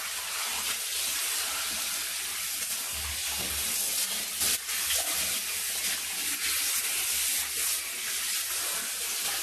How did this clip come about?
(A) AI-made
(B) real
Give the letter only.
B